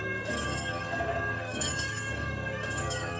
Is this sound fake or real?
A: fake